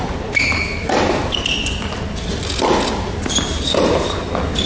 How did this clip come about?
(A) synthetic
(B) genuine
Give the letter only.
B